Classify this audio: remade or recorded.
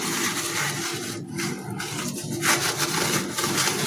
recorded